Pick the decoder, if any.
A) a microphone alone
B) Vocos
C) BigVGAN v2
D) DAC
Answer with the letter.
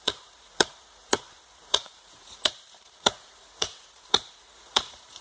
B